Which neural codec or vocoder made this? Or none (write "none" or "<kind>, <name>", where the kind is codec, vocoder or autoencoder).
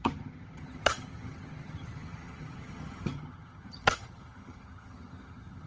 vocoder, HiFi-GAN